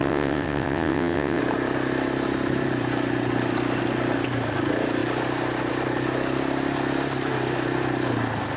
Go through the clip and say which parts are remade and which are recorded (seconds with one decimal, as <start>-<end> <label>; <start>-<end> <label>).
0.0-1.4 remade; 1.4-8.6 recorded

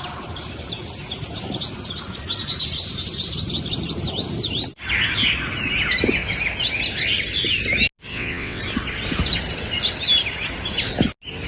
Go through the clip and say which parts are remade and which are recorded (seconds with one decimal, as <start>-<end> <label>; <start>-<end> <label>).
0.0-8.1 recorded; 8.1-8.6 remade; 8.6-11.5 recorded

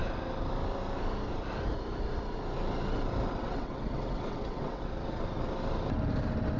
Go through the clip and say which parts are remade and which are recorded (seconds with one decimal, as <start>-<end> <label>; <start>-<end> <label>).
0.0-3.4 recorded; 3.4-4.9 remade; 4.9-6.6 recorded

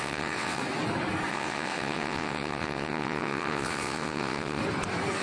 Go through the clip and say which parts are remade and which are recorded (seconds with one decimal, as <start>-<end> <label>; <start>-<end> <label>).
0.0-0.6 remade; 0.6-1.3 recorded; 1.3-4.6 remade; 4.6-5.2 recorded

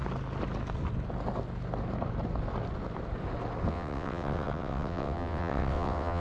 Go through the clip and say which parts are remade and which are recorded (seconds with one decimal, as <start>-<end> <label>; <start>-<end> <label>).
0.0-3.7 recorded; 3.7-6.2 remade

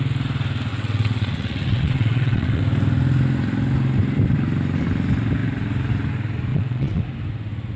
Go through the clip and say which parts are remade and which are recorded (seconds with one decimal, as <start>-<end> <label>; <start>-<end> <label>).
0.0-0.7 recorded; 0.7-2.6 remade; 2.6-6.5 recorded; 6.5-7.0 remade; 7.0-7.8 recorded